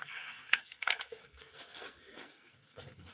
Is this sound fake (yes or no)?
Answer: yes